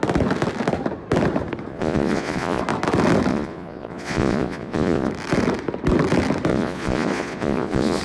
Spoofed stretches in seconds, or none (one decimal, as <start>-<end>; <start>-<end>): 1.7-2.6; 3.3-5.1; 6.5-8.0